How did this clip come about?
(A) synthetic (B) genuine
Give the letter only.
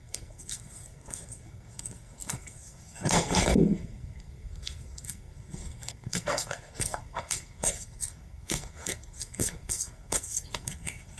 A